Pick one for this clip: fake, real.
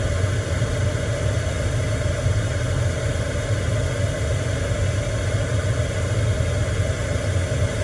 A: real